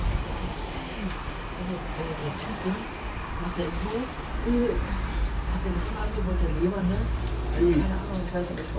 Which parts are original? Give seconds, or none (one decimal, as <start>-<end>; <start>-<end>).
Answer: 0.0-2.2; 3.3-4.6; 7.3-8.8